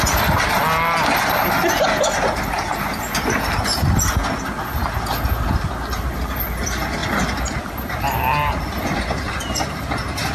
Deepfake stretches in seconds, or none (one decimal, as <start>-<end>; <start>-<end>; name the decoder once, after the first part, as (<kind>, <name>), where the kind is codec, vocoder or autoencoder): none